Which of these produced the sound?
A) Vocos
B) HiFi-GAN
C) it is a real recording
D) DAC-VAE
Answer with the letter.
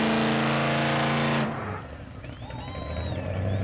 C